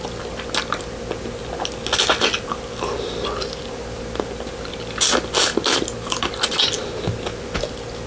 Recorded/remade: recorded